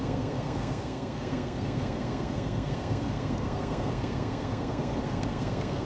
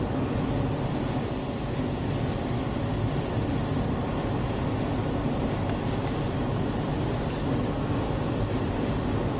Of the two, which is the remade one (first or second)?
first